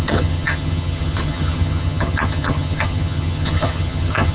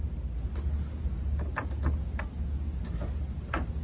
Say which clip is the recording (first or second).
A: second